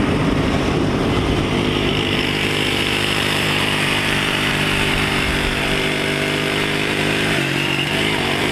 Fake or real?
fake